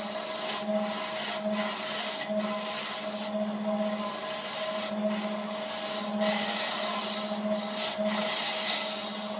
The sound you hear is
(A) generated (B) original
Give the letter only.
B